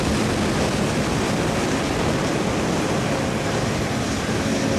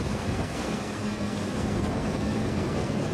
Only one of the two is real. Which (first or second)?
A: first